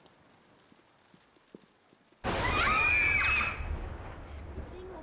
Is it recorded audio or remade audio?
recorded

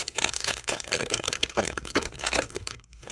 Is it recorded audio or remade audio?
remade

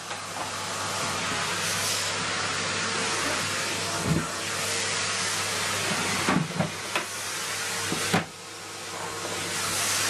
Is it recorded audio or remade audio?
recorded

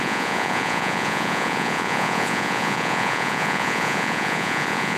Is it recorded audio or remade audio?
remade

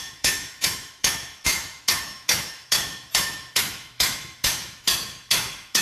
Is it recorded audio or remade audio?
remade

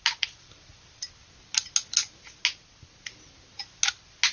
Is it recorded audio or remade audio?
recorded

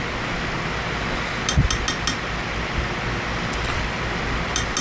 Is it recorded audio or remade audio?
recorded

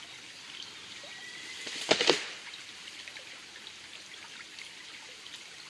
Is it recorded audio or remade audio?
recorded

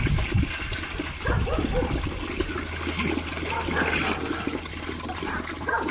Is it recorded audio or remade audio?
recorded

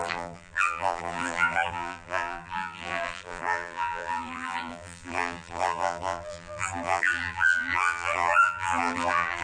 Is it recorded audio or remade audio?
remade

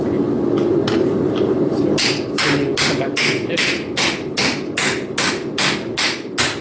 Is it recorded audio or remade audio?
recorded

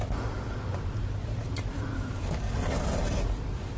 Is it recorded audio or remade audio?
recorded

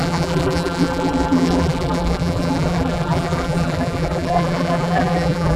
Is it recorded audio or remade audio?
remade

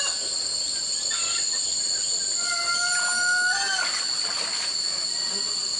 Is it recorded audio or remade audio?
recorded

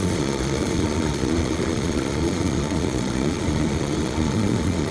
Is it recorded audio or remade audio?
remade